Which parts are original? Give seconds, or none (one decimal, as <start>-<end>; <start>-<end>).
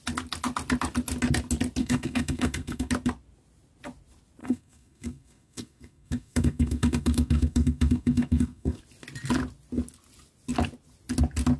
0.0-1.8; 2.9-4.4; 8.8-11.6